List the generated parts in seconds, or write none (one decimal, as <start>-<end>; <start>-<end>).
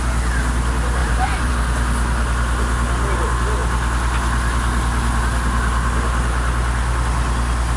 1.0-1.5